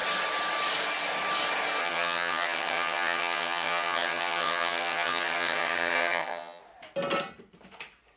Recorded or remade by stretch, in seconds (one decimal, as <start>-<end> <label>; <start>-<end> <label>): 0.0-1.8 recorded; 1.8-6.6 remade; 6.6-8.2 recorded